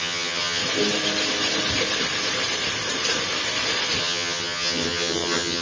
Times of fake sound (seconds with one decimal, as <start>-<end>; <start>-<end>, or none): 0.0-0.6; 4.0-5.6